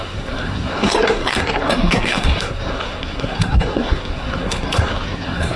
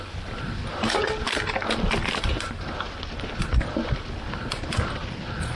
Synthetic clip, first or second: first